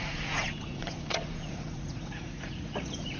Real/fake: fake